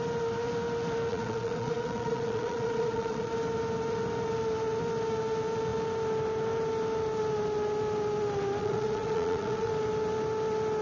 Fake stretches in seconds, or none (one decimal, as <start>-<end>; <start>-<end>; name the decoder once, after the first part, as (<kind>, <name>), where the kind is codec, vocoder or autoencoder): 1.1-3.3 (vocoder, Vocos); 8.6-9.7